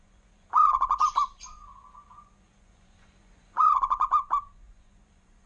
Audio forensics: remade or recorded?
remade